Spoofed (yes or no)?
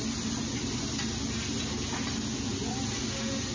no